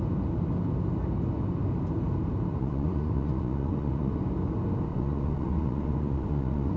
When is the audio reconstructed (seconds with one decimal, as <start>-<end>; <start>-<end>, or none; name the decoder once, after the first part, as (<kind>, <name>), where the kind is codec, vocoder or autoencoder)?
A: 2.5-4.2 (vocoder, Vocos); 4.9-6.8